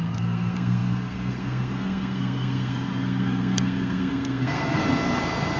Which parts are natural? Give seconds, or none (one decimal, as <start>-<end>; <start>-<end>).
4.8-5.6